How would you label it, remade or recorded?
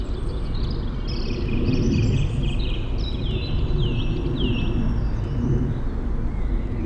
recorded